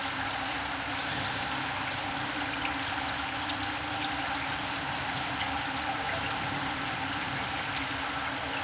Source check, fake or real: real